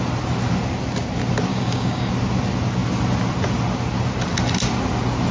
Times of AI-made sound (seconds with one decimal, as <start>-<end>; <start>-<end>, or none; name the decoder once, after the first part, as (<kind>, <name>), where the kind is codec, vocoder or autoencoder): 1.5-2.1 (codec, DAC)